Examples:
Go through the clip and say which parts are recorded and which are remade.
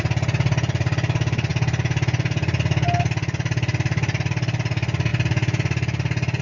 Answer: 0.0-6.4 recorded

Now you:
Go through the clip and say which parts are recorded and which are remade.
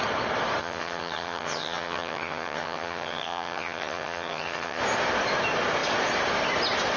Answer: 0.0-0.6 recorded; 0.6-4.8 remade; 4.8-7.0 recorded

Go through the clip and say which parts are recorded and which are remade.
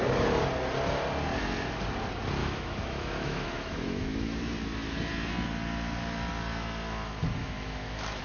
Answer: 0.0-2.4 recorded; 2.4-4.4 remade; 4.4-7.4 recorded; 7.4-8.2 remade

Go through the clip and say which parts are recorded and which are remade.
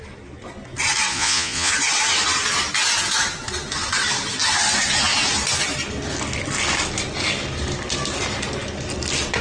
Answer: 0.0-1.1 recorded; 1.1-1.7 remade; 1.7-9.4 recorded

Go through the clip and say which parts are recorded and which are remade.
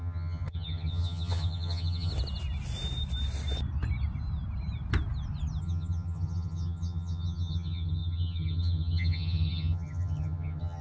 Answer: 0.0-2.1 remade; 2.1-5.6 recorded; 5.6-10.8 remade